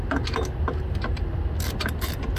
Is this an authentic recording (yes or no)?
yes